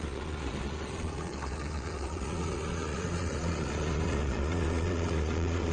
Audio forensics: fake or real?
fake